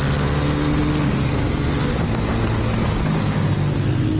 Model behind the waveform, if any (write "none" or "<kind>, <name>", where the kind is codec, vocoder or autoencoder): none